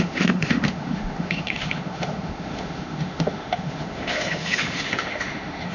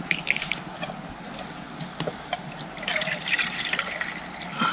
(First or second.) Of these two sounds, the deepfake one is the first